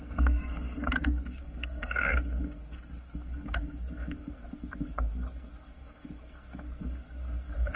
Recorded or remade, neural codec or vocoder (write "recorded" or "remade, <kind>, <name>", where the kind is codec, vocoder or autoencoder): remade, codec, SNAC